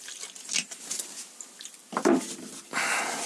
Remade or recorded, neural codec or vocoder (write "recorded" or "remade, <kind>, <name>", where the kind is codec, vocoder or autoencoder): recorded